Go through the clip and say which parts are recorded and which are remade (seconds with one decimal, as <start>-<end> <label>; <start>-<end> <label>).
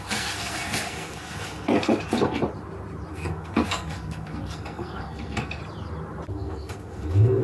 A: 0.0-2.4 remade; 2.4-3.1 recorded; 3.1-5.6 remade; 5.6-6.3 recorded; 6.3-7.4 remade